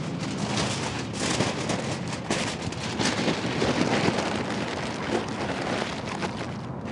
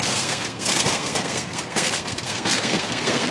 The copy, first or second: second